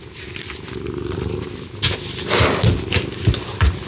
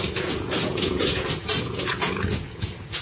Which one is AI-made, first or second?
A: second